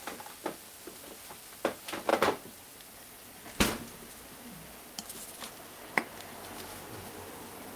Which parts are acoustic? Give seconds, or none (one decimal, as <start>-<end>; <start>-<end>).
0.0-7.8